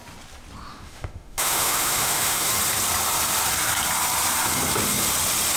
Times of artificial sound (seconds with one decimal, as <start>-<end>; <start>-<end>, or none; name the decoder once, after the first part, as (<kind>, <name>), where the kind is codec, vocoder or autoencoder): 0.7-2.5 (autoencoder, DAC-VAE)